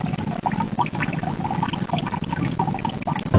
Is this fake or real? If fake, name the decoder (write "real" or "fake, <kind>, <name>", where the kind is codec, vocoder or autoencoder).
real